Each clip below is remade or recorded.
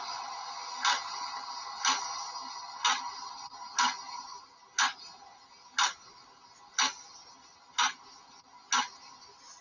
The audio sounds recorded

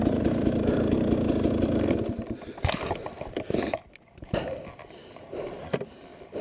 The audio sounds remade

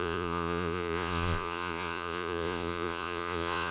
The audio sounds remade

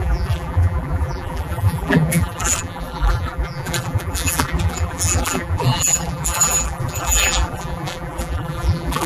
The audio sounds remade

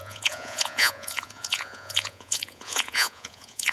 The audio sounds remade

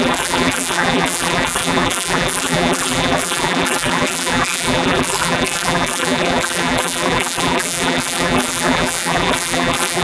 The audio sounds remade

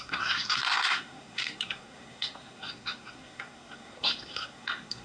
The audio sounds remade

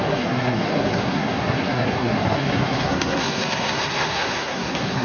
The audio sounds remade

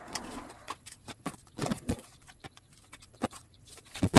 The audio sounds remade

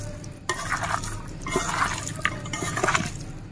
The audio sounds recorded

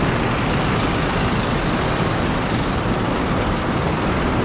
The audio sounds recorded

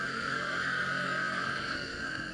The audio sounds remade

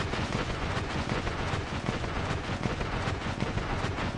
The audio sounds remade